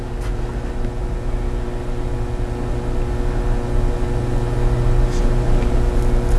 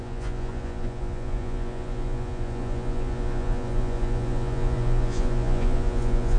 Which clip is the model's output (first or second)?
second